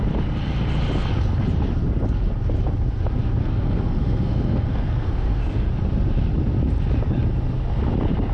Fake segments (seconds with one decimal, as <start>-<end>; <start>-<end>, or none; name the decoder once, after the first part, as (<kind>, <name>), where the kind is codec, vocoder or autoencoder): 3.4-5.7 (codec, SNAC)